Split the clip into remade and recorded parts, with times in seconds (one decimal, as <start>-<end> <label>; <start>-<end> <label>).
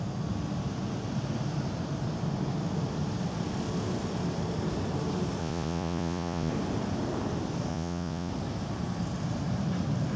0.0-5.4 recorded; 5.4-6.5 remade; 6.5-7.7 recorded; 7.7-8.3 remade; 8.3-10.2 recorded